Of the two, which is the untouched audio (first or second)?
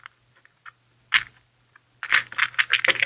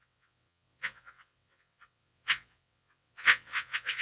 first